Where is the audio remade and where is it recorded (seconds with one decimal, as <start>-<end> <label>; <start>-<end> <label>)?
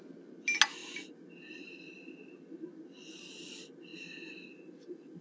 0.0-5.2 recorded